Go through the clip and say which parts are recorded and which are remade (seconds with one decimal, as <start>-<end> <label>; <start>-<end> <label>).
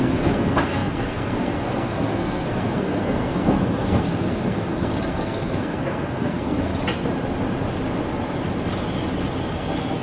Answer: 0.0-6.7 remade; 6.7-9.5 recorded; 9.5-10.0 remade